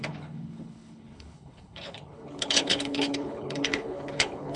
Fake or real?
fake